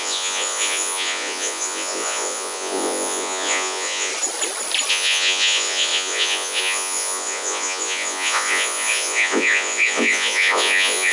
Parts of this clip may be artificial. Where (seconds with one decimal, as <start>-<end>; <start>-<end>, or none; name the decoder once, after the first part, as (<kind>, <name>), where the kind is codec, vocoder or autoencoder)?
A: 0.0-4.1 (vocoder, Vocos); 4.9-11.1